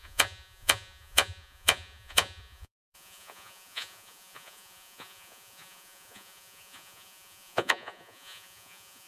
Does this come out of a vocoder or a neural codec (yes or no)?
yes